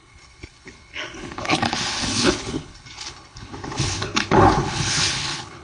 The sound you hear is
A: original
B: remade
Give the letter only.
B